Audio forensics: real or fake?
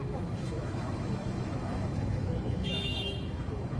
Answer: fake